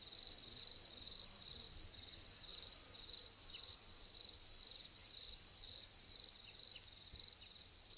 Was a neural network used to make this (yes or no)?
no